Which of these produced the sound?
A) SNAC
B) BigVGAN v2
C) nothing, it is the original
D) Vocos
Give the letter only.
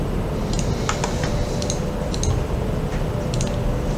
C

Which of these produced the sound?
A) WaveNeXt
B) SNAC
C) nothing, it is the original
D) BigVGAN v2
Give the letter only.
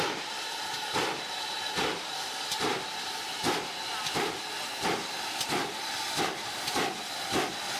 D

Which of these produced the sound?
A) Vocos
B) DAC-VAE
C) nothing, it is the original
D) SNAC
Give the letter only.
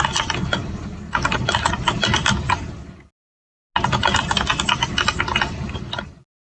C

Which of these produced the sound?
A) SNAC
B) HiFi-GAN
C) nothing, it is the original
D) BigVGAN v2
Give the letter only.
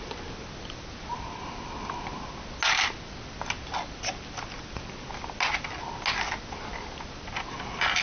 C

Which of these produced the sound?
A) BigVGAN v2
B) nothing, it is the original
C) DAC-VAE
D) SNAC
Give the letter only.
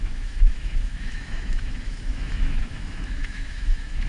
C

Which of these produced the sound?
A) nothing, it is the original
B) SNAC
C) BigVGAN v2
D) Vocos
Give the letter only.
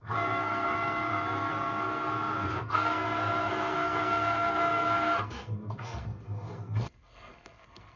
B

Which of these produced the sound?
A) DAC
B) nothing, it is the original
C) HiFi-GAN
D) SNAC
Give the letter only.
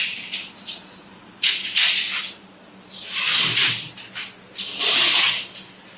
B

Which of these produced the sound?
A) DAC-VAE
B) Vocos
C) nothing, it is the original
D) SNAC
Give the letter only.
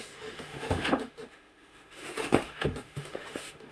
A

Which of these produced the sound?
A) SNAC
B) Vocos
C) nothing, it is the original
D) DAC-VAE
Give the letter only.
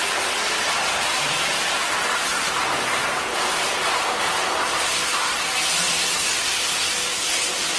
C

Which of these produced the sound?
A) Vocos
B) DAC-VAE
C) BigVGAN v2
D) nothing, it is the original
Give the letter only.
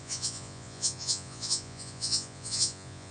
A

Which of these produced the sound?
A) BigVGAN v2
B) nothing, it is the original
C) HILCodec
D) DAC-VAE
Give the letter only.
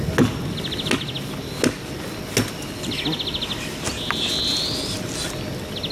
B